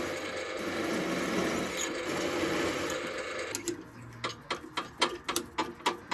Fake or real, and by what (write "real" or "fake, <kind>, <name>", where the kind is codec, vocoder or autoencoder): real